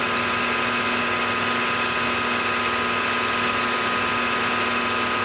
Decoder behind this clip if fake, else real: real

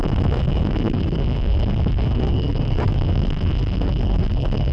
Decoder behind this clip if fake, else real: fake, codec, SNAC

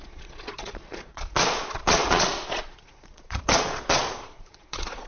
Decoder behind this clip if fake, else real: fake, vocoder, Vocos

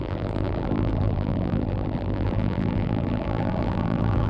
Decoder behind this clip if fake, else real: fake, vocoder, BigVGAN v2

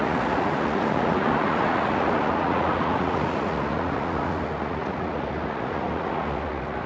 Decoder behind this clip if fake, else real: fake, vocoder, Vocos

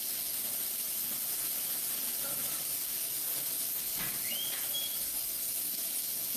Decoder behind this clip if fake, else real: real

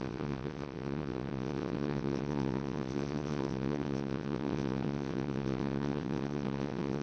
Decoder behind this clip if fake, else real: fake, vocoder, WaveNeXt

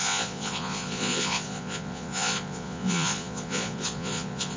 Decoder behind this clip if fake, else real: fake, vocoder, Vocos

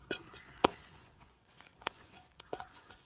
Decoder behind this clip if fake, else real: fake, vocoder, Vocos